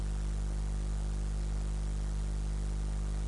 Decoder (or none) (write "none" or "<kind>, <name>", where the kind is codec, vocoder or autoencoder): none